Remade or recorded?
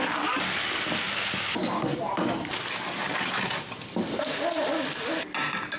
recorded